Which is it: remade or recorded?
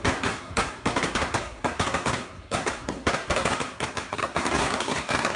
remade